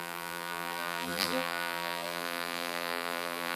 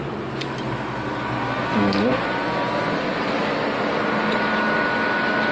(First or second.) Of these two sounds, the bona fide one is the second